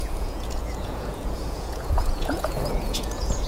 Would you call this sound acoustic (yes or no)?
no